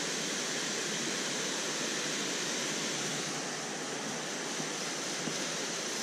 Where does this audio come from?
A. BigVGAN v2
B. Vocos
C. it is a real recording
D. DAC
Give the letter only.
C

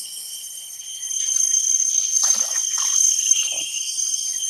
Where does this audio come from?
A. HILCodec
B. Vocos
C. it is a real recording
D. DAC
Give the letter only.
A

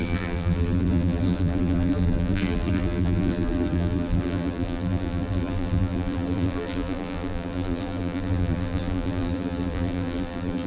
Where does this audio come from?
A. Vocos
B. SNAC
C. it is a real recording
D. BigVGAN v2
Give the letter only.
D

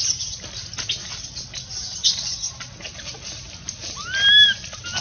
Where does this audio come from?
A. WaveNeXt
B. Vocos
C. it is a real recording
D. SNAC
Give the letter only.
C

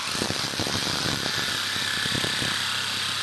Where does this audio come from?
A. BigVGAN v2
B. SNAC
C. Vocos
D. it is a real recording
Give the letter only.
D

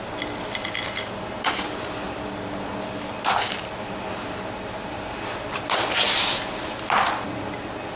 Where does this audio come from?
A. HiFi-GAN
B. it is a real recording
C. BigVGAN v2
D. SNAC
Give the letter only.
B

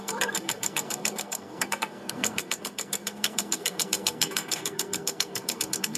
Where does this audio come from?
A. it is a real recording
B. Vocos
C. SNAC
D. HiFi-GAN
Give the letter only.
C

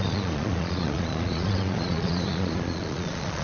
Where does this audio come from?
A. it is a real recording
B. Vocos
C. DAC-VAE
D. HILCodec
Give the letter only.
B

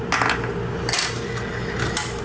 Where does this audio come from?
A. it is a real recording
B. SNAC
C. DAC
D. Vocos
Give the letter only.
A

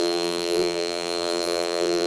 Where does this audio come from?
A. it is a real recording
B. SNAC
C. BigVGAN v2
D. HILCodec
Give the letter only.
C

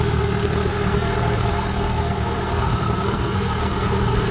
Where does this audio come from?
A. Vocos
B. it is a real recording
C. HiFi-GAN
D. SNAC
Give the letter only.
D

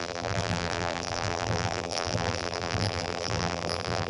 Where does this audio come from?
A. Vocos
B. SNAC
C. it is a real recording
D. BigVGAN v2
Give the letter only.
D